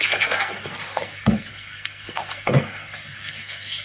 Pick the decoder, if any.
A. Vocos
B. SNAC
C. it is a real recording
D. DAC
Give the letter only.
B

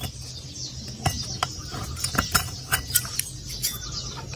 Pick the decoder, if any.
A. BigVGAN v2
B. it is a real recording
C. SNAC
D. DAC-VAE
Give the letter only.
B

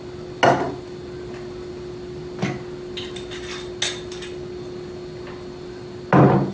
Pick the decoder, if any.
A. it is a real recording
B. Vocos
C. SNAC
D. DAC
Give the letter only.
A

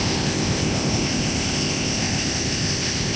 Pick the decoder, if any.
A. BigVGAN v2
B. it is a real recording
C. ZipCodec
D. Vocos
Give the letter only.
C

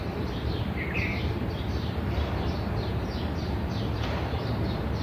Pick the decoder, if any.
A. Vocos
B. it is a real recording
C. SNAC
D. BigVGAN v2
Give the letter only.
D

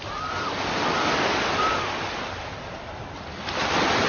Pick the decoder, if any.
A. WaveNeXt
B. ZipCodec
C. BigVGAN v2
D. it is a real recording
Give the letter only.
D